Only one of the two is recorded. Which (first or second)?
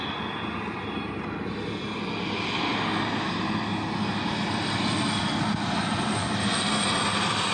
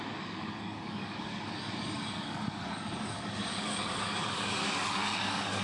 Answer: first